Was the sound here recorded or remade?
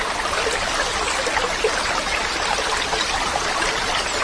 remade